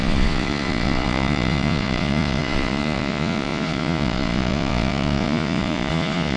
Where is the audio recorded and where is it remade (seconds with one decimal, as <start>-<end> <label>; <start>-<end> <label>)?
0.0-6.4 remade